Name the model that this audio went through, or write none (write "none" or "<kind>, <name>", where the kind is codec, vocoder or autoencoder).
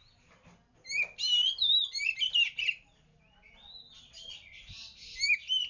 none